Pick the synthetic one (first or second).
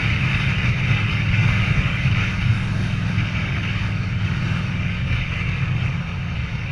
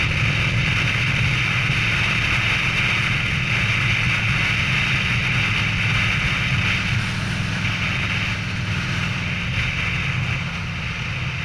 first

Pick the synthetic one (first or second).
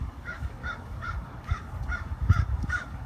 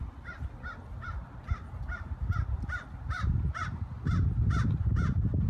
first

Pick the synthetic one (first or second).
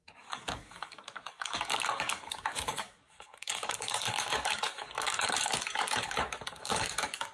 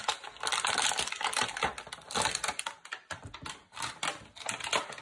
first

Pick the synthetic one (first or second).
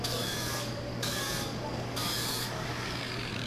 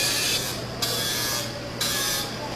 first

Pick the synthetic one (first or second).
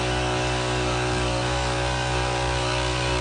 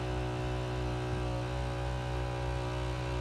first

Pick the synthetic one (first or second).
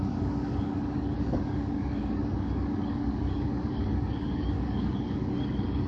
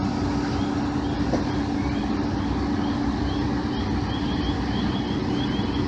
first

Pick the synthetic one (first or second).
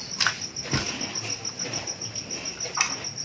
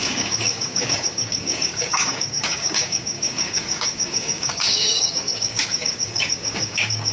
second